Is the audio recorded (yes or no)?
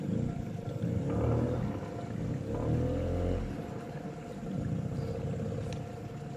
yes